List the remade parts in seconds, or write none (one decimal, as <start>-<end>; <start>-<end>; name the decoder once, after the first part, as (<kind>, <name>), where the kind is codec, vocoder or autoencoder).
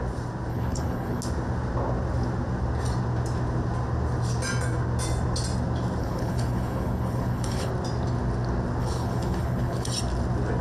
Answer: 0.5-1.2 (codec, HILCodec); 6.0-7.7; 8.8-9.9